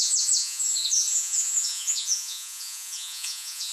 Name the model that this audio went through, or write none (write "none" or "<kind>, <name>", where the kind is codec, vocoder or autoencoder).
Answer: vocoder, Vocos